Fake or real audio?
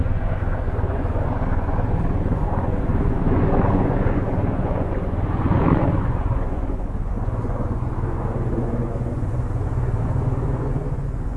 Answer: fake